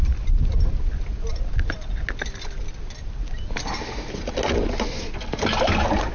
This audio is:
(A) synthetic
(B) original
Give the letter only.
B